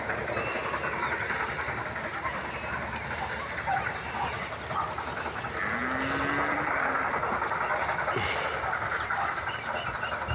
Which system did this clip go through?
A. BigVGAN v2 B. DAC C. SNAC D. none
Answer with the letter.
D